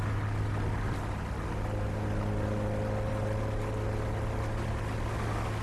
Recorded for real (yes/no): yes